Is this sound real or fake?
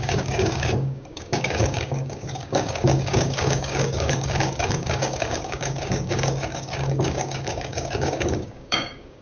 fake